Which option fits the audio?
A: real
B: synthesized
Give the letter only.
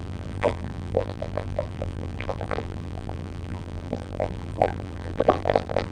B